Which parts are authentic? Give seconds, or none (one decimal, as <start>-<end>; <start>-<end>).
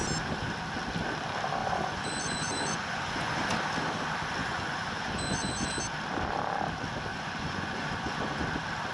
0.0-1.6; 3.4-4.4; 5.7-7.1; 8.4-8.9